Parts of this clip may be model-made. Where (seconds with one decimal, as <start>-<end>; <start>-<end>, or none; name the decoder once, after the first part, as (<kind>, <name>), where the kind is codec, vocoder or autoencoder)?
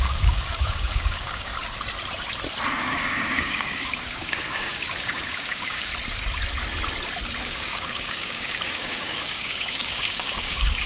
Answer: 0.0-1.5 (codec, DAC); 2.7-5.9; 7.4-10.9